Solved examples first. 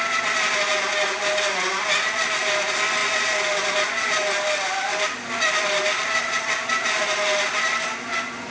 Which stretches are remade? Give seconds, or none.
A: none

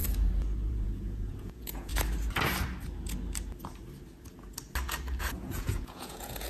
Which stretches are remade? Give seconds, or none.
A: 0.7-1.9; 5.2-6.5

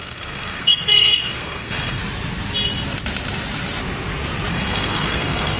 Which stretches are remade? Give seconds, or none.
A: 0.0-2.0; 4.5-5.6

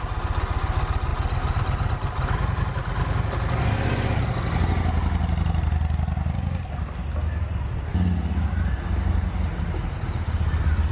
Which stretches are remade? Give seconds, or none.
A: none

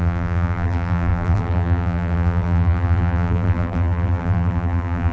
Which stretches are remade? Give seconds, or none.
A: 0.0-5.1

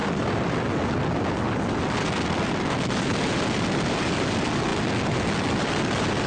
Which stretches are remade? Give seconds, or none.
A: none

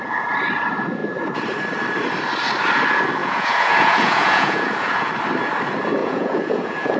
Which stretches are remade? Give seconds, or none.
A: 3.2-5.1; 6.0-7.0